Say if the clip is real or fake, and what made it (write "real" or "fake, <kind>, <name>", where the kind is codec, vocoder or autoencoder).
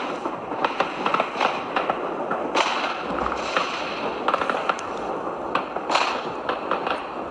real